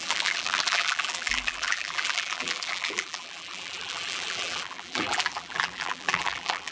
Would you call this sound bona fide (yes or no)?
no